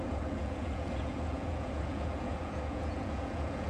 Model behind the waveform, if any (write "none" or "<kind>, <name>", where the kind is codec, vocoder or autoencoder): vocoder, Vocos